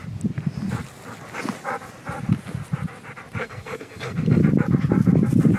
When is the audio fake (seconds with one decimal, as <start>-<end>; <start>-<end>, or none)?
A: 3.4-4.4